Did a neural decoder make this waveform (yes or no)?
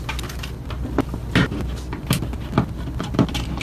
no